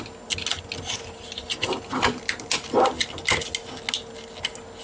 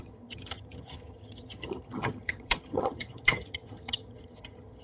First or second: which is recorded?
first